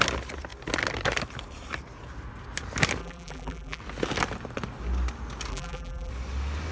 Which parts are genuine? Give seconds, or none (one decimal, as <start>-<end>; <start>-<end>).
0.0-3.0; 3.8-5.5; 6.1-6.7